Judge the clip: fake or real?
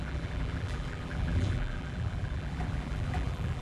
fake